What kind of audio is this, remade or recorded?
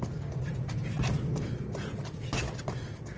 recorded